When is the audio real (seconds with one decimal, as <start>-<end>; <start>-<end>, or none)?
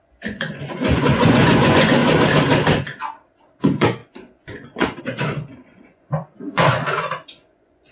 2.0-3.6